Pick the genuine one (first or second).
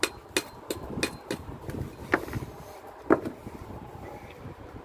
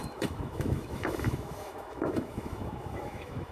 first